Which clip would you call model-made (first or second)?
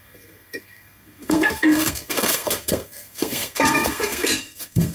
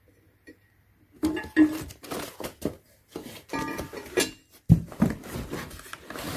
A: first